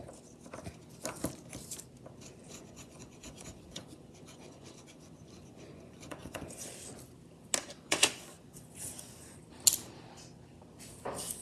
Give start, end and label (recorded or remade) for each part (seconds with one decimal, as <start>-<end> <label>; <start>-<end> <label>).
0.0-2.4 recorded; 2.4-6.7 remade; 6.7-7.6 recorded; 7.6-9.4 remade; 9.4-11.4 recorded